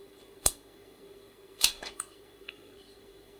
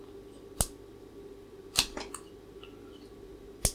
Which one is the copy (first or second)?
first